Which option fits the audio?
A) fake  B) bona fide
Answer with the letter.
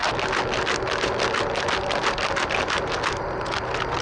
B